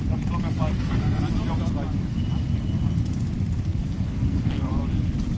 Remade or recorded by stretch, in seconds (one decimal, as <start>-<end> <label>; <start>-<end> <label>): 0.0-0.7 recorded; 0.7-1.2 remade; 1.2-3.7 recorded; 3.7-4.7 remade; 4.7-5.4 recorded